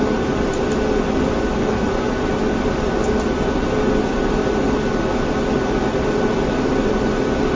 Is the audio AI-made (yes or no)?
no